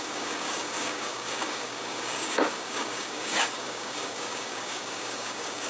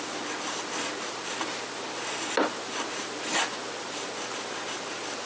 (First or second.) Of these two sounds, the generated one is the first